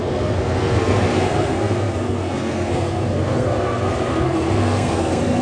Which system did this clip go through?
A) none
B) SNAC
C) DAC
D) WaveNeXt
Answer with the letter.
B